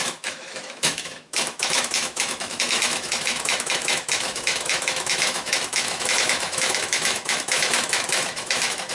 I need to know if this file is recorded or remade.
remade